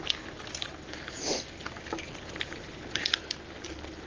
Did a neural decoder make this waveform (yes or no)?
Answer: no